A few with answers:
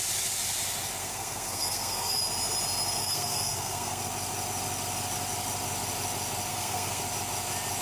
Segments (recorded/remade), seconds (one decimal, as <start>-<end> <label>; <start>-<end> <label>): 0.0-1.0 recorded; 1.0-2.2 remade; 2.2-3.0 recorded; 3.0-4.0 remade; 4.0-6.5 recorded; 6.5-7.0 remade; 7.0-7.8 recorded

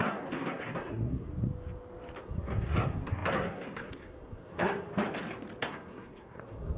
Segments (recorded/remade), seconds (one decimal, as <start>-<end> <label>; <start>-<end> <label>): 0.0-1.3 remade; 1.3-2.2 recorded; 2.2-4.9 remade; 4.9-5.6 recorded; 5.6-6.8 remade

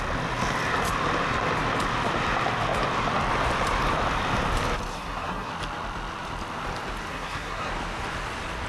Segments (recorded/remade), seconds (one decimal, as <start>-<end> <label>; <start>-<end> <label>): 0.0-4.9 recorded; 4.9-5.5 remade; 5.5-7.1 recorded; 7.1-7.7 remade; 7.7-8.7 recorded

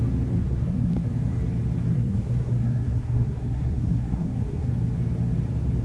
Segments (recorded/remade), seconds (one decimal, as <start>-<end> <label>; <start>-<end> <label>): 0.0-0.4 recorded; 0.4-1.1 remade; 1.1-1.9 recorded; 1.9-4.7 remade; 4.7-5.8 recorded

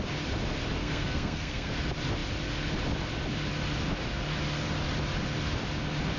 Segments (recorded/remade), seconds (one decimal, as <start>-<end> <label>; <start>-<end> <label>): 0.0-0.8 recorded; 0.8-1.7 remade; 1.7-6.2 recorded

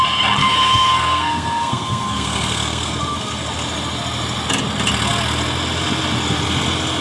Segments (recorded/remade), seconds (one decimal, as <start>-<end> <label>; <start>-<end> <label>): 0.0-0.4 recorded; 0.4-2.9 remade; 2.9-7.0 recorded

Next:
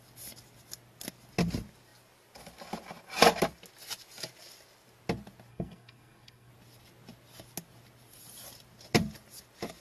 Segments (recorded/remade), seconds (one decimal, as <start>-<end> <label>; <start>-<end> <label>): 0.0-5.5 recorded; 5.5-6.5 remade; 6.5-9.8 recorded

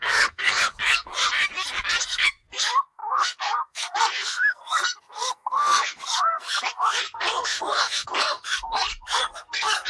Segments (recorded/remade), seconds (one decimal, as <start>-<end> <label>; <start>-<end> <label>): 0.0-1.1 remade; 1.1-2.0 recorded; 2.0-9.9 remade